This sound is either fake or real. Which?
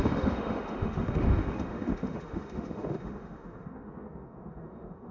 fake